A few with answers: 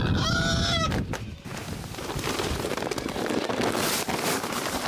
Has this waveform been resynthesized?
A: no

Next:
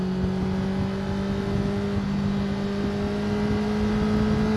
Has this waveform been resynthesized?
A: no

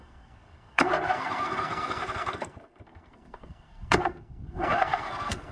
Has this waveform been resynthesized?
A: yes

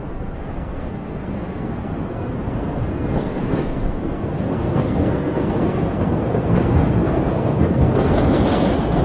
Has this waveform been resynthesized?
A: yes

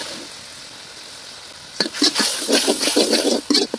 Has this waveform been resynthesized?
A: no